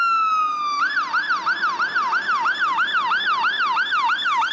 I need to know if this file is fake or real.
real